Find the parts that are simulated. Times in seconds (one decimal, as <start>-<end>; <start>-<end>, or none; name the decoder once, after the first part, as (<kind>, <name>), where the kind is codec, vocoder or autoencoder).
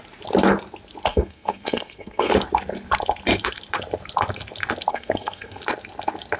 1.1-2.3 (codec, SNAC); 4.9-5.6